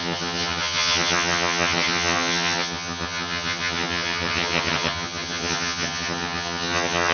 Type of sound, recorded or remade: remade